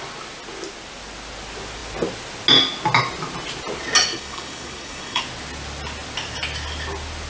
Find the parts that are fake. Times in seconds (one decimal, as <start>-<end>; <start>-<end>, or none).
4.1-5.2